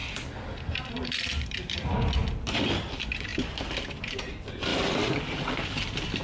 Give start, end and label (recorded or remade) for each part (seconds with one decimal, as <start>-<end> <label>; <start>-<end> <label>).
0.0-6.2 recorded